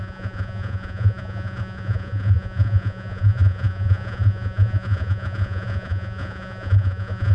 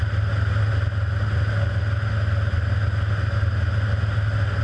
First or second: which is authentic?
second